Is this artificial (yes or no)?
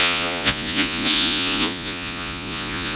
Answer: yes